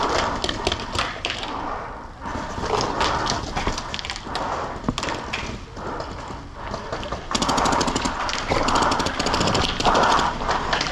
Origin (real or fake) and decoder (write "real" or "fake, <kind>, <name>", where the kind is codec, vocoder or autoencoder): real